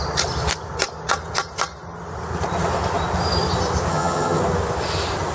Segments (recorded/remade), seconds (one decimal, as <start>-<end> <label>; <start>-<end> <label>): 0.0-3.9 recorded; 3.9-4.4 remade; 4.4-5.3 recorded